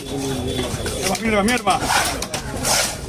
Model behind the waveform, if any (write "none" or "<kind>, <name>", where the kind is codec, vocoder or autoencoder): none